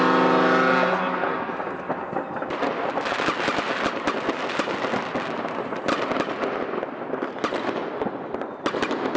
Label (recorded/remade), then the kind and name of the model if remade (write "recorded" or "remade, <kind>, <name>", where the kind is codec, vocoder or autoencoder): recorded